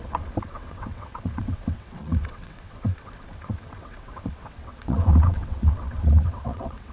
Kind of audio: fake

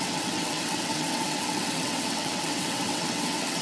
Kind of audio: fake